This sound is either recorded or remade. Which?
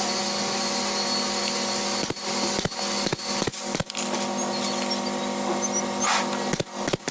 recorded